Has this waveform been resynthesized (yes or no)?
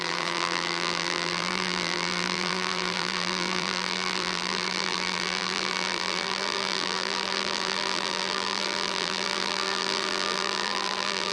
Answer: yes